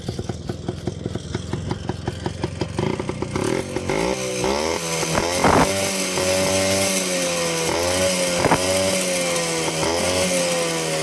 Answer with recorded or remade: recorded